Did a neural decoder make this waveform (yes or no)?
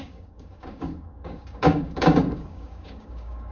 yes